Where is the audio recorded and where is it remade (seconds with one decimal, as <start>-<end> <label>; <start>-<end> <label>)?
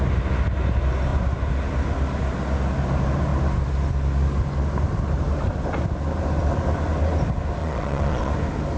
0.0-7.6 recorded; 7.6-8.3 remade; 8.3-8.8 recorded